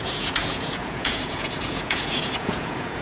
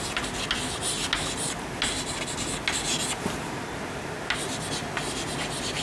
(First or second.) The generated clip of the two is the first